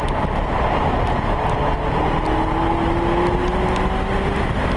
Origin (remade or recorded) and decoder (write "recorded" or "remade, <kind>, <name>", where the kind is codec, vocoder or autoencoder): recorded